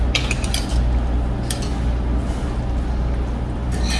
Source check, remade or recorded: recorded